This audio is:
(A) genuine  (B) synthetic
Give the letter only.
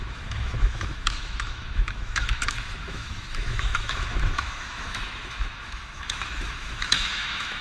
B